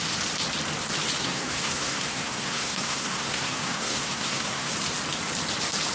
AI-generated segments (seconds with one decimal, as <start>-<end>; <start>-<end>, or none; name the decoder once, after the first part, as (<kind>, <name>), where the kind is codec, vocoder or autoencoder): 1.2-4.7 (codec, SNAC)

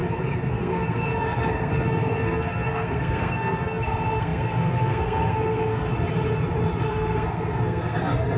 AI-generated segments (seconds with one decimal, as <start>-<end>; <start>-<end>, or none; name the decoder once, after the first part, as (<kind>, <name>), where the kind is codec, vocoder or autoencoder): 0.5-5.9 (codec, SNAC); 6.8-8.4

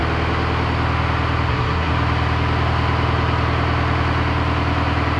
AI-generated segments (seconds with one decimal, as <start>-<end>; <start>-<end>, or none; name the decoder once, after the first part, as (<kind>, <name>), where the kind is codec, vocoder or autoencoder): 1.5-1.9 (codec, SNAC)